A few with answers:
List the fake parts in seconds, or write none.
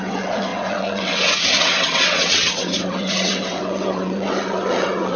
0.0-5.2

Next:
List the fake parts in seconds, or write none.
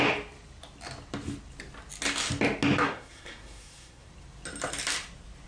2.8-4.1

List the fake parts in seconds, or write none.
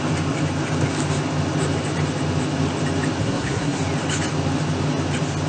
3.2-3.8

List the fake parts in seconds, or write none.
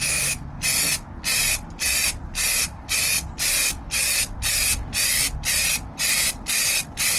none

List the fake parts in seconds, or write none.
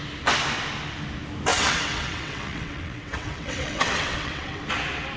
1.5-4.6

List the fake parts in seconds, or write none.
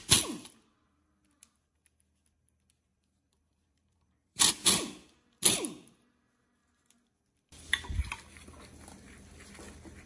2.9-4.5